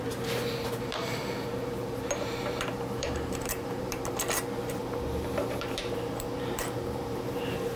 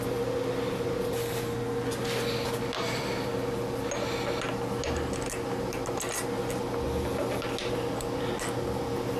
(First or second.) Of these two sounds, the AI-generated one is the first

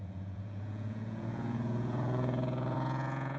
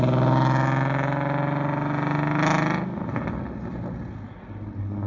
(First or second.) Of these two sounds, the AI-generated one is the first